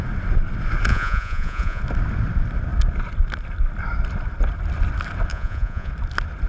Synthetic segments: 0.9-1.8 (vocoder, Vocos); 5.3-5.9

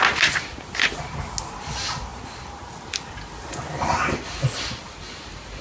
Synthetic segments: none

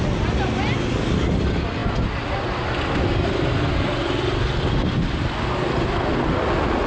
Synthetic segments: none

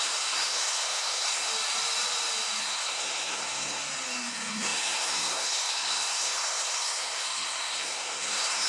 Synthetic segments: 0.0-1.5 (codec, SNAC); 2.6-3.8; 4.3-8.7

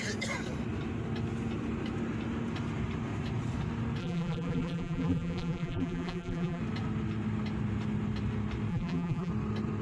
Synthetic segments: 4.0-6.6 (vocoder, BigVGAN v2); 8.7-9.3